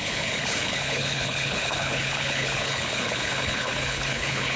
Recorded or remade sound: remade